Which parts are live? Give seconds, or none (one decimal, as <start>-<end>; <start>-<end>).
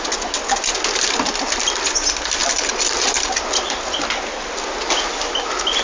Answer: 0.0-5.8